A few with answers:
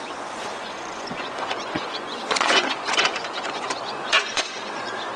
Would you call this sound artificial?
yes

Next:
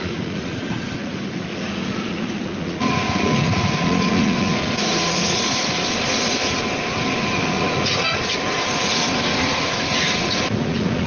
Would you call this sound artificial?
yes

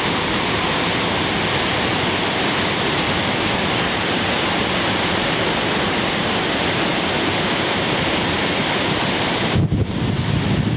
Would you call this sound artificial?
no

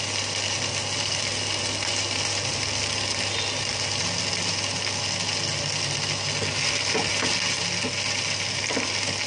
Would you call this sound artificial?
no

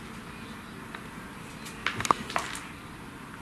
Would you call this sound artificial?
no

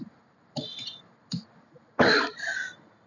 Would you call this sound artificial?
no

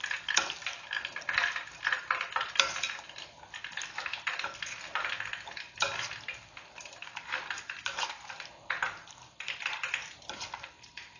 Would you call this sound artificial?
no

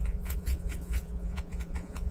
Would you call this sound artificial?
yes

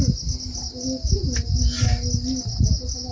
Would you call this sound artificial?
no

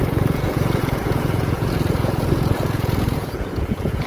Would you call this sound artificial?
yes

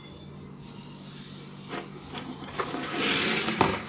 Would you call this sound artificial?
no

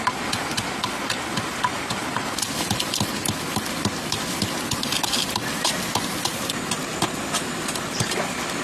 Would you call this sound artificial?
no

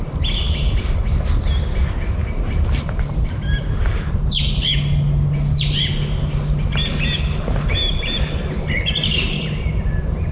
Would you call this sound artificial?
no